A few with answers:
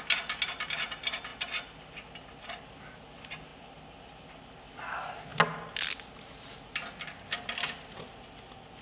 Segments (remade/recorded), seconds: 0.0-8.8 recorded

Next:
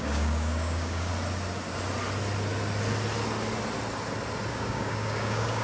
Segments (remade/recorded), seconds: 0.0-1.1 remade; 1.1-4.5 recorded; 4.5-5.6 remade

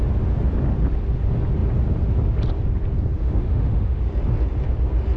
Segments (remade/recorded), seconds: 0.0-3.2 recorded; 3.2-4.0 remade; 4.0-5.2 recorded